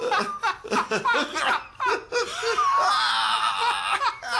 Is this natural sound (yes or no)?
yes